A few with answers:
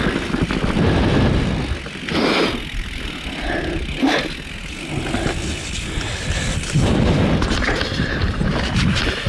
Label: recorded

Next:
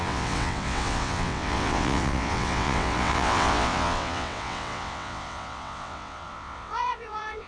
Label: remade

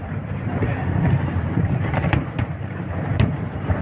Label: remade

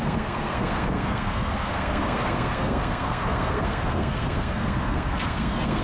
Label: remade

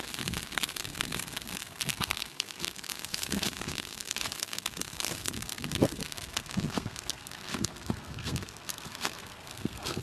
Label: remade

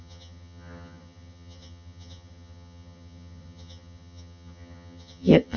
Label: remade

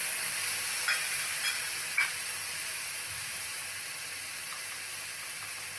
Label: recorded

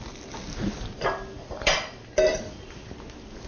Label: recorded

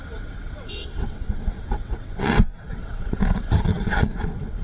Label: remade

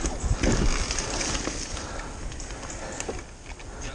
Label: recorded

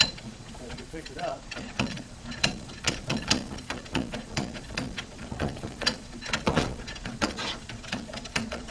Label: remade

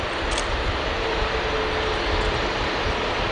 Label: recorded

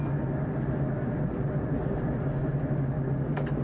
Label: recorded